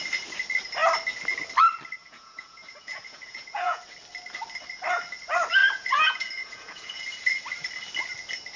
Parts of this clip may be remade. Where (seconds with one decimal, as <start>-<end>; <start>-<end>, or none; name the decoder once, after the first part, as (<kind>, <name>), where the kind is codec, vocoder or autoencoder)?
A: 2.0-3.8 (vocoder, Vocos); 5.6-7.0